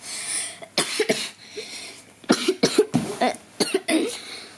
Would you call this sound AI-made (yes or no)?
no